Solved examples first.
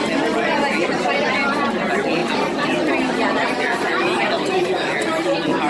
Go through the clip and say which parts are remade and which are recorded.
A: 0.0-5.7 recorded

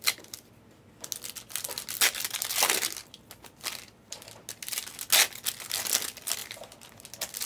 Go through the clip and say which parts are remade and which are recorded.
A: 0.0-7.5 recorded

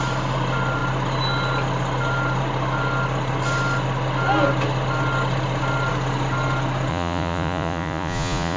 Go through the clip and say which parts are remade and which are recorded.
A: 0.0-6.9 recorded; 6.9-8.6 remade

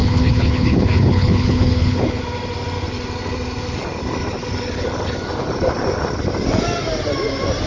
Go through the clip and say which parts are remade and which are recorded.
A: 0.0-2.2 remade; 2.2-7.7 recorded

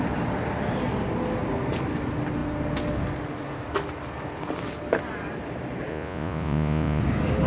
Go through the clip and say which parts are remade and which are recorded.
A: 0.0-5.9 recorded; 5.9-7.0 remade; 7.0-7.5 recorded

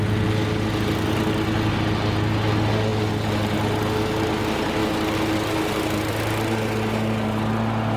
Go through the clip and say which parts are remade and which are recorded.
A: 0.0-8.0 recorded

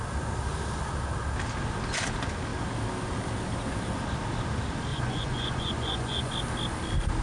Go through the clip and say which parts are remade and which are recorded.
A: 0.0-4.9 recorded; 4.9-6.3 remade; 6.3-7.2 recorded

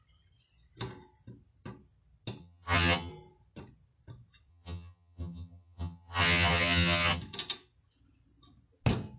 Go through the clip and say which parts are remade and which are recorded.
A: 0.0-2.4 recorded; 2.4-3.1 remade; 3.1-4.5 recorded; 4.5-7.2 remade; 7.2-9.2 recorded